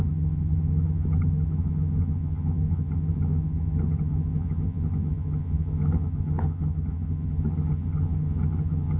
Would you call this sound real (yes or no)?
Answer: no